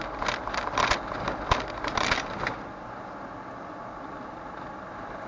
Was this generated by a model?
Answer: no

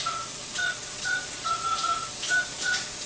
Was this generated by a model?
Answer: yes